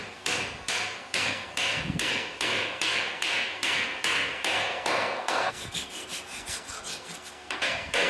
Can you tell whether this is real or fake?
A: fake